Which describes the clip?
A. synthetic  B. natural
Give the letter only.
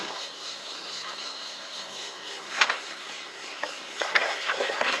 A